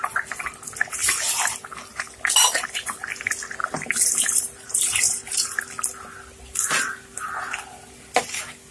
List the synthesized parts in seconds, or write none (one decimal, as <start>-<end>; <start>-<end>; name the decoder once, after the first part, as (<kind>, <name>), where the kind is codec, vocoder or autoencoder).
3.6-5.6 (vocoder, BigVGAN v2)